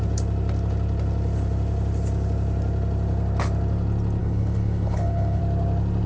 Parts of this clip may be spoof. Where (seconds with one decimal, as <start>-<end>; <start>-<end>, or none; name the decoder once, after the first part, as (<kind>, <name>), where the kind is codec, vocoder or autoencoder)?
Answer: 4.2-5.4 (codec, HILCodec)